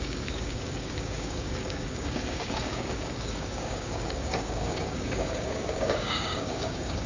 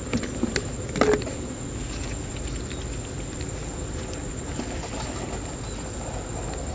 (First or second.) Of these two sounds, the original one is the second